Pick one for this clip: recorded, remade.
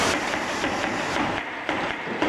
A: recorded